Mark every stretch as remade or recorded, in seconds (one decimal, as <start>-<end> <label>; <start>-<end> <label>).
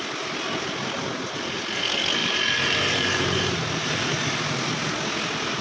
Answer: 0.0-2.2 recorded; 2.2-4.5 remade; 4.5-5.6 recorded